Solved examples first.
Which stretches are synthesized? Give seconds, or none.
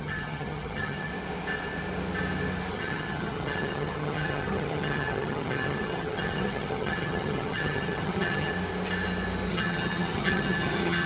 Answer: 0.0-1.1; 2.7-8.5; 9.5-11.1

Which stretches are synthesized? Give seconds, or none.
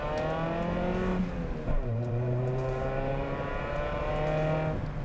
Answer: 1.1-4.1